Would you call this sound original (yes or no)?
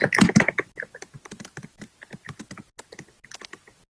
yes